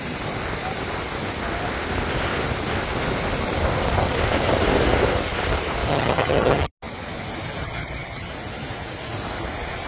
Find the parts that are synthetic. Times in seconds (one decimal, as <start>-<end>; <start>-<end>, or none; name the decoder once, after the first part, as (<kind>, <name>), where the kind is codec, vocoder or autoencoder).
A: 5.9-6.7 (vocoder, HiFi-GAN); 7.6-8.3